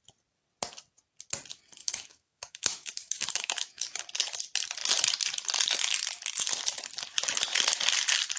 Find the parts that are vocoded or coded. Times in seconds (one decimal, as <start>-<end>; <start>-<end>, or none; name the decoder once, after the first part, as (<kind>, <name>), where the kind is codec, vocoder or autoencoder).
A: 1.8-4.0 (autoencoder, DAC-VAE)